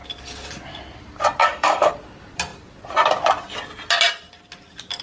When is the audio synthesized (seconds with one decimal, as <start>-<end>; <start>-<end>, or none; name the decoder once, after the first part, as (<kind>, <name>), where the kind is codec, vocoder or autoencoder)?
1.4-1.9 (codec, DAC)